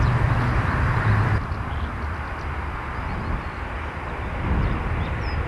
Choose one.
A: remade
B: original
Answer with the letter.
A